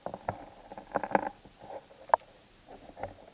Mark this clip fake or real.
real